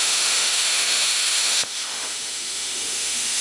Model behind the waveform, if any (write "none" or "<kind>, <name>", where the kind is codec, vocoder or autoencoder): autoencoder, DAC-VAE